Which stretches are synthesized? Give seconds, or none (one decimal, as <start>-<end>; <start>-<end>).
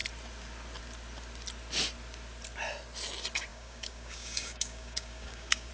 3.5-5.7